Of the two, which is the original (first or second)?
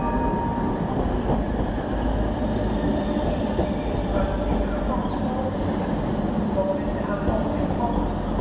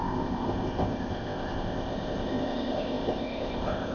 first